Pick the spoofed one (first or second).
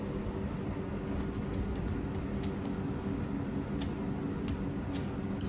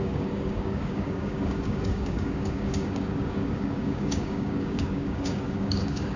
second